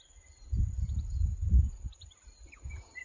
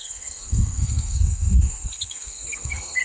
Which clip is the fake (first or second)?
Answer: second